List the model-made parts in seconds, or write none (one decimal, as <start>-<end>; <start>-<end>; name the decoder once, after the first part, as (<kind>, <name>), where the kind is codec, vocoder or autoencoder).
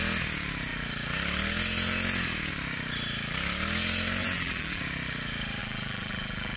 4.2-4.8 (vocoder, BigVGAN v2); 5.6-6.6